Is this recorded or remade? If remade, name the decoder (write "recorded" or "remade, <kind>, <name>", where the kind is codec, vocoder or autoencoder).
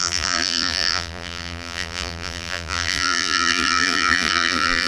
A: remade, vocoder, BigVGAN v2